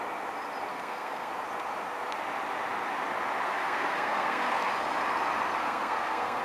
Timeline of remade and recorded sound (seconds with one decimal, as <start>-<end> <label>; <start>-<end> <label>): 0.0-0.7 recorded; 0.7-1.3 remade; 1.3-3.6 recorded; 3.6-4.7 remade; 4.7-5.6 recorded; 5.6-6.4 remade